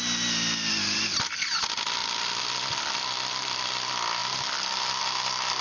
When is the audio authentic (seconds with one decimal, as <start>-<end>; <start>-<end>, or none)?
0.0-2.0; 3.7-4.2; 5.0-5.6

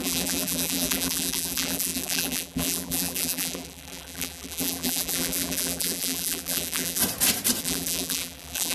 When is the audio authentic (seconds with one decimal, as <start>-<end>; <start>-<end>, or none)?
7.0-7.6

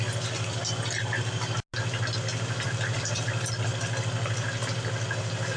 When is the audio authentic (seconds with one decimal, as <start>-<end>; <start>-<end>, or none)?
0.0-2.3; 3.1-5.6

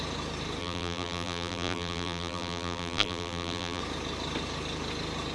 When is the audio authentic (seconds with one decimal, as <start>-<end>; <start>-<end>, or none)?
0.0-0.6; 3.8-5.3

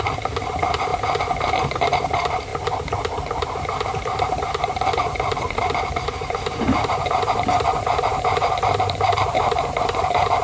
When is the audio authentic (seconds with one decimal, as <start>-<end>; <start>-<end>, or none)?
0.9-1.5

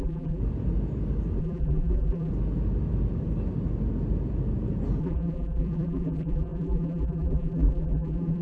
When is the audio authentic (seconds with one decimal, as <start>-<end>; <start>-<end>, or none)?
0.4-1.4; 2.3-5.0

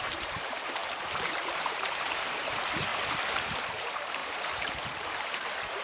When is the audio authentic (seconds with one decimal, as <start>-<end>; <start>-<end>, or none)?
2.9-3.7

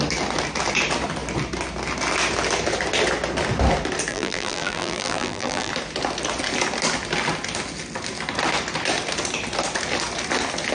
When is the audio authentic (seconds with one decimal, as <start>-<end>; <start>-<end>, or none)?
0.0-4.1; 5.7-10.7